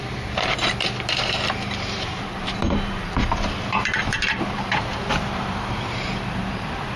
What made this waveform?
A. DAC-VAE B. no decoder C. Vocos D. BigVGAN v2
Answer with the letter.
D